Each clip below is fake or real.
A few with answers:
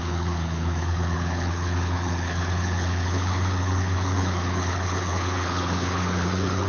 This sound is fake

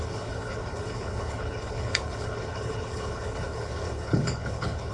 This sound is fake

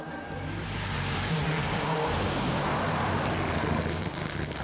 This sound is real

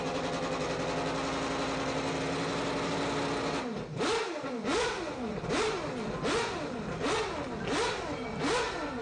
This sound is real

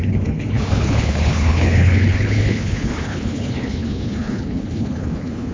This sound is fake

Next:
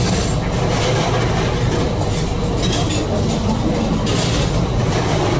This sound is real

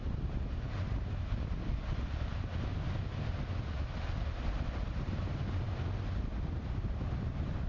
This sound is real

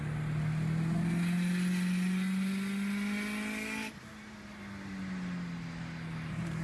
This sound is real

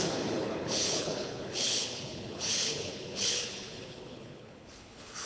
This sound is fake